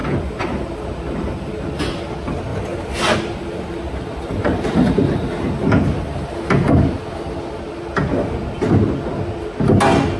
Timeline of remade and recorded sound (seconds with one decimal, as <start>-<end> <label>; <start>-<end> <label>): 0.0-2.0 remade; 2.0-2.5 recorded; 2.5-6.5 remade; 6.5-10.2 recorded